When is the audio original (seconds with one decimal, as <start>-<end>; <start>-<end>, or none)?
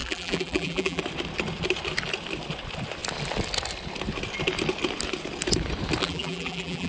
1.0-6.0